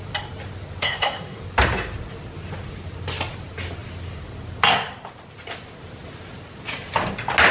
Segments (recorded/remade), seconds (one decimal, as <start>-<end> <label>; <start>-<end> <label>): 0.0-0.8 recorded; 0.8-1.4 remade; 1.4-7.5 recorded